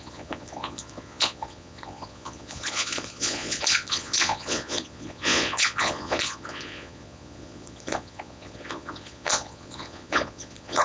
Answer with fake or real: fake